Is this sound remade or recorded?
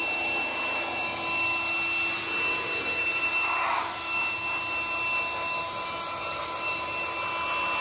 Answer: recorded